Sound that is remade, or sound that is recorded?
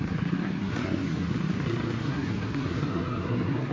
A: remade